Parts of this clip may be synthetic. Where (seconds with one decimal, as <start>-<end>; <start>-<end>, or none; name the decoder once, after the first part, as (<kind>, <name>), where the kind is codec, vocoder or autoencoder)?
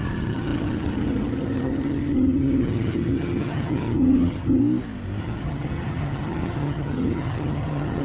0.0-4.6 (vocoder, HiFi-GAN); 5.2-8.0